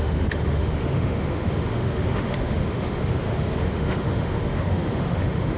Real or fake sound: fake